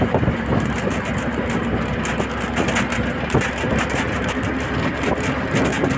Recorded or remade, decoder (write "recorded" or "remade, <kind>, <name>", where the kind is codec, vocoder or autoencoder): recorded